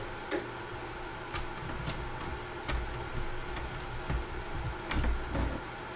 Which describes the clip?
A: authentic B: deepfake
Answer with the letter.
A